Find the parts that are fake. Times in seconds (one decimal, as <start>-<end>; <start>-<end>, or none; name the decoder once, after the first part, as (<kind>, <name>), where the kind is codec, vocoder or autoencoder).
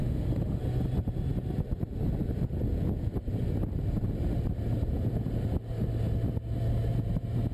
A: 0.0-0.6 (autoencoder, DAC-VAE)